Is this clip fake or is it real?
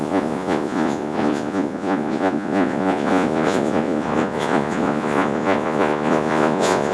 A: fake